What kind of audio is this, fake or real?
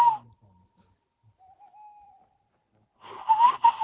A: real